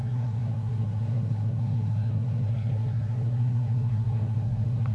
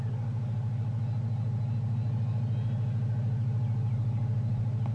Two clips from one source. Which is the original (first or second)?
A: second